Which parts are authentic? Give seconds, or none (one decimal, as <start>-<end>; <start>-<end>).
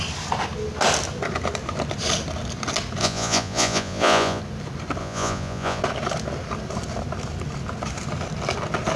0.0-3.0; 4.4-5.0; 5.8-9.0